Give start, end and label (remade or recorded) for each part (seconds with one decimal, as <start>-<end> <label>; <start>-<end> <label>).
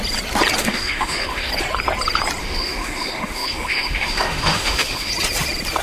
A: 0.0-0.6 recorded; 0.6-1.5 remade; 1.5-2.4 recorded; 2.4-5.1 remade; 5.1-5.8 recorded